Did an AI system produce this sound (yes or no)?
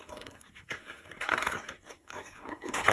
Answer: yes